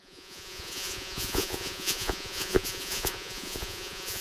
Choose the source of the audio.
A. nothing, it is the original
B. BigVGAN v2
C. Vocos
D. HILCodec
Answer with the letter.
C